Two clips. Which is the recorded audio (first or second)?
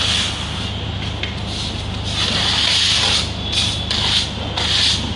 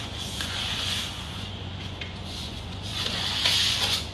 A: first